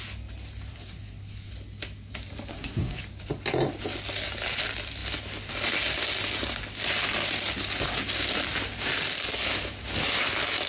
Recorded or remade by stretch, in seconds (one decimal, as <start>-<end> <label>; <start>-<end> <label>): 0.0-0.7 recorded; 0.7-1.5 remade; 1.5-2.5 recorded; 2.5-3.0 remade; 3.0-10.7 recorded